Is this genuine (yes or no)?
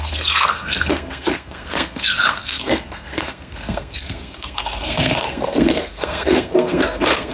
no